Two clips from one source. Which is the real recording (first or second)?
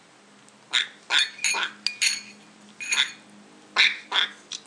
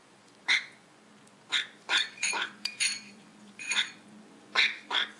first